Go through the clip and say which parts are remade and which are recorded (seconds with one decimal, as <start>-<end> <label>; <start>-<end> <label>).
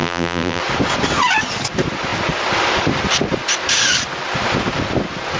0.0-0.6 remade; 0.6-5.4 recorded